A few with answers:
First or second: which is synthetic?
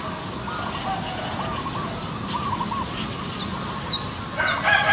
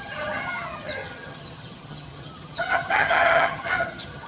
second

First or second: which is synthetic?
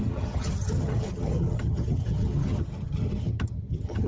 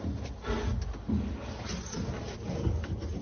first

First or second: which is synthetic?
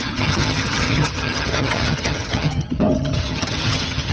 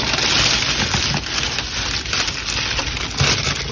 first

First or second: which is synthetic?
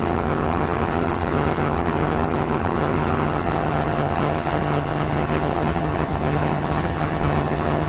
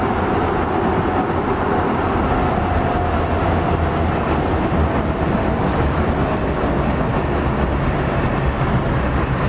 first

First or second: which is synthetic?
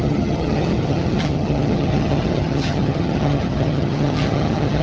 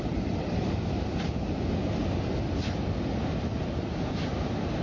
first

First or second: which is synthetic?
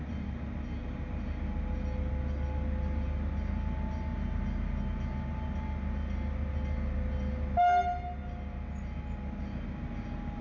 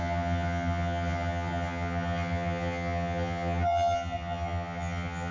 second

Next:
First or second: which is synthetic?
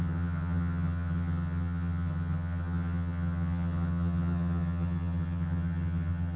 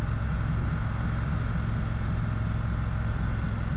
first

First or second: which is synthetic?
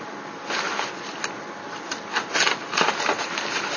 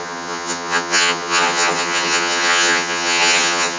second